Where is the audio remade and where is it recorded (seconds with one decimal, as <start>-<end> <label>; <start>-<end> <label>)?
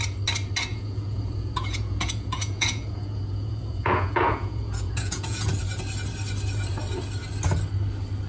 0.0-0.7 recorded; 0.7-5.5 remade; 5.5-8.3 recorded